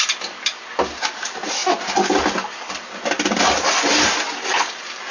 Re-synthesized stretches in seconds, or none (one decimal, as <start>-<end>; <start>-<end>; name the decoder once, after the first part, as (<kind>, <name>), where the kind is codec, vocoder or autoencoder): none